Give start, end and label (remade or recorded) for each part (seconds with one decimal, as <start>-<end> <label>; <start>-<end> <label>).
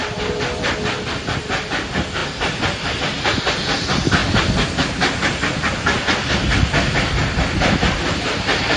0.0-8.8 recorded